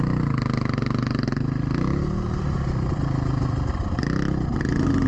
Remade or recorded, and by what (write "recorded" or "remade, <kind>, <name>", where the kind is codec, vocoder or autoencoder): recorded